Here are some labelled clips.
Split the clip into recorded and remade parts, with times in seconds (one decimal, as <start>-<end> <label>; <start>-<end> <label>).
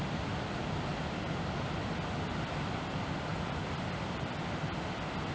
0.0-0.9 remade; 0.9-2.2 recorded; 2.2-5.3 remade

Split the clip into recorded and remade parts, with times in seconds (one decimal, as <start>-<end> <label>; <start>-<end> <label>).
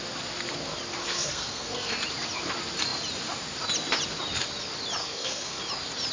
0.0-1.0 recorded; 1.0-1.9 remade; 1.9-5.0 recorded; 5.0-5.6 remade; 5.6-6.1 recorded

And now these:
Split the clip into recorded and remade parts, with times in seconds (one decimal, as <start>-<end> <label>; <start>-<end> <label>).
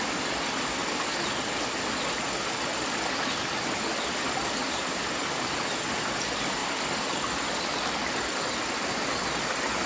0.0-4.6 recorded; 4.6-5.6 remade; 5.6-9.9 recorded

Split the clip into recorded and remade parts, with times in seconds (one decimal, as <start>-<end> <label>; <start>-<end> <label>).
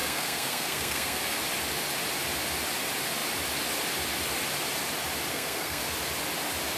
0.0-1.4 remade; 1.4-5.3 recorded; 5.3-5.8 remade; 5.8-6.8 recorded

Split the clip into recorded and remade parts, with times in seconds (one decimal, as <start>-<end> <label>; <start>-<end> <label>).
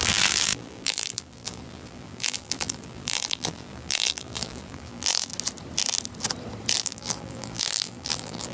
0.0-5.3 remade; 5.3-6.8 recorded; 6.8-8.5 remade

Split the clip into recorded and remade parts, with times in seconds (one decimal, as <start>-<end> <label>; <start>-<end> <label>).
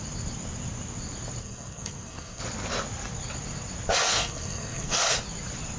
0.0-1.4 recorded; 1.4-2.4 remade; 2.4-4.1 recorded; 4.1-5.0 remade; 5.0-5.8 recorded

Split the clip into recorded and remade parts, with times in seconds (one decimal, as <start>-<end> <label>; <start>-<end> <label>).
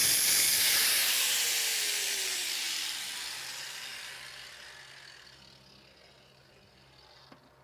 0.0-3.2 remade; 3.2-7.6 recorded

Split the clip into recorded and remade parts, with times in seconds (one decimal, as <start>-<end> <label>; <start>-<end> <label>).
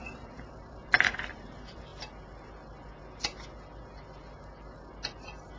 0.0-1.9 remade; 1.9-5.6 recorded